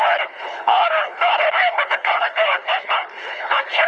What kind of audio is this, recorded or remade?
remade